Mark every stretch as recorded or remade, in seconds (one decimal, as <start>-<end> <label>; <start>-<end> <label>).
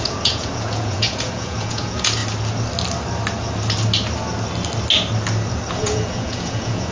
0.0-2.2 remade; 2.2-5.7 recorded; 5.7-6.9 remade